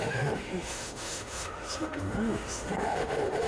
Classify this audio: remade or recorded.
remade